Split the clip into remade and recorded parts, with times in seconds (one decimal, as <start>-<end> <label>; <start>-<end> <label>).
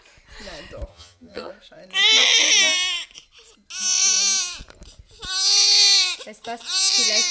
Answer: 0.0-0.9 recorded; 0.9-1.5 remade; 1.5-7.3 recorded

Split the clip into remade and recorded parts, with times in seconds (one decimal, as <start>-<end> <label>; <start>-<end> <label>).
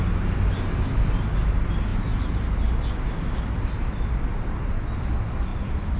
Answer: 0.0-6.0 recorded